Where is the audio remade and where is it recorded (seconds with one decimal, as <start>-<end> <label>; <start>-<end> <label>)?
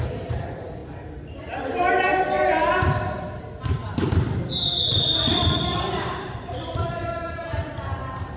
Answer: 0.0-0.8 remade; 0.8-1.4 recorded; 1.4-2.1 remade; 2.1-2.7 recorded; 2.7-8.4 remade